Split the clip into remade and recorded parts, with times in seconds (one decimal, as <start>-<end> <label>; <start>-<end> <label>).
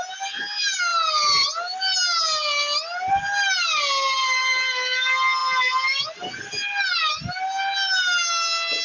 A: 0.0-8.8 recorded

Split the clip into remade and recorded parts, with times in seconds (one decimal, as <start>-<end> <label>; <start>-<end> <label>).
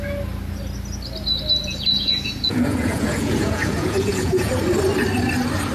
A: 0.0-1.6 recorded; 1.6-4.5 remade; 4.5-5.7 recorded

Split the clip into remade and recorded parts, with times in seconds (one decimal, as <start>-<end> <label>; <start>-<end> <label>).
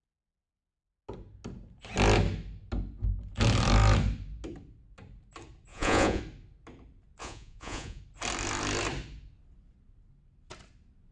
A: 0.0-5.7 recorded; 5.7-6.2 remade; 6.2-7.2 recorded; 7.2-8.0 remade; 8.0-11.1 recorded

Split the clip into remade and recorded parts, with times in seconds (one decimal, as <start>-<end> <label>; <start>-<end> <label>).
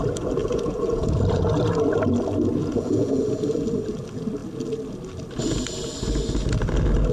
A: 0.0-0.4 recorded; 0.4-1.1 remade; 1.1-2.6 recorded; 2.6-3.2 remade; 3.2-7.1 recorded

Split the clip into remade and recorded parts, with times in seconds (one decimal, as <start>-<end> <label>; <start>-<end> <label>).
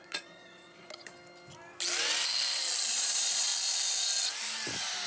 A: 0.0-1.1 remade; 1.1-2.9 recorded; 2.9-3.5 remade; 3.5-5.1 recorded